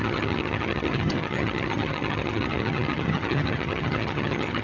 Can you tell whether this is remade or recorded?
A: remade